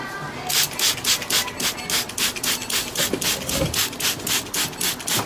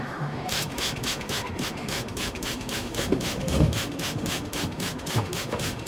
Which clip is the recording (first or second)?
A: first